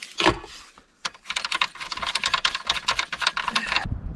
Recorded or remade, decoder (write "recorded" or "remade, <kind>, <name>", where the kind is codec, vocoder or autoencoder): recorded